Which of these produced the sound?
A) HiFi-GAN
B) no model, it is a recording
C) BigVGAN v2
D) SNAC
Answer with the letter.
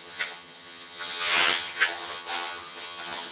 A